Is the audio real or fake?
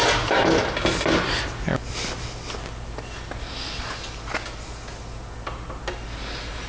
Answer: real